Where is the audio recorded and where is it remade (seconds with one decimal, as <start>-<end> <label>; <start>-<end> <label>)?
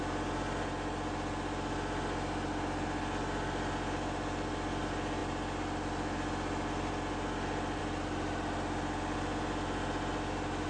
0.0-10.7 recorded